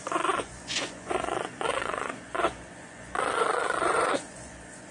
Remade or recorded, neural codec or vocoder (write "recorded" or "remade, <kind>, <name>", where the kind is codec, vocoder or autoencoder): remade, vocoder, Vocos